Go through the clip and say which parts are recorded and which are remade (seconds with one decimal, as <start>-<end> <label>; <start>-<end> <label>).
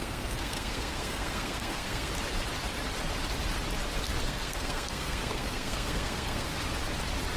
0.0-2.1 remade; 2.1-4.2 recorded; 4.2-6.5 remade; 6.5-7.4 recorded